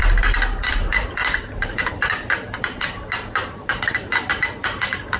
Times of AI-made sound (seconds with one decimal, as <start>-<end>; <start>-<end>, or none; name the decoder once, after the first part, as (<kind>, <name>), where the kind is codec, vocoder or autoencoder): 0.7-5.2 (vocoder, BigVGAN v2)